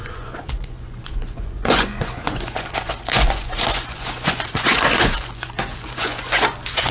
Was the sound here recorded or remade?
remade